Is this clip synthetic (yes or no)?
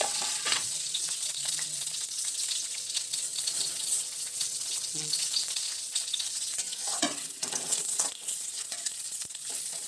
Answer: yes